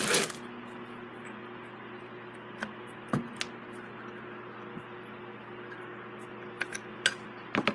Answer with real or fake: real